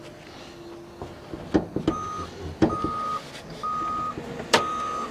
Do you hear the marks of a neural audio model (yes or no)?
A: no